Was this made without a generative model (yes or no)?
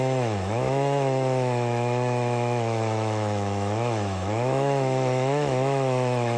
no